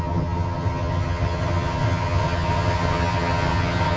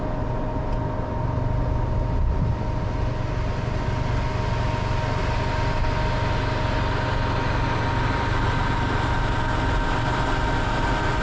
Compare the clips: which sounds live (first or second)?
second